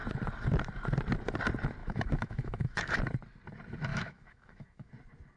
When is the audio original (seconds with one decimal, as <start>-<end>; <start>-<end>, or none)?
0.0-1.8; 2.9-3.9; 4.9-5.4